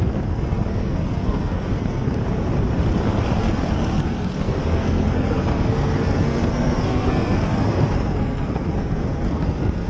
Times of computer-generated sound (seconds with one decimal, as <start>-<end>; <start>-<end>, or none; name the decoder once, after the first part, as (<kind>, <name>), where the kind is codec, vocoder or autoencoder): 0.0-2.2 (codec, SNAC); 3.4-9.9